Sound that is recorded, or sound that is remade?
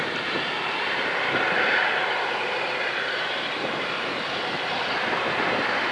remade